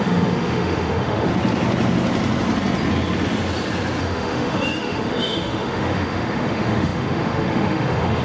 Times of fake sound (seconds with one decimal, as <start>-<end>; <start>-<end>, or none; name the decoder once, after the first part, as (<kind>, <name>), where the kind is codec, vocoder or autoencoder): 0.0-1.3 (autoencoder, DAC-VAE); 4.0-8.2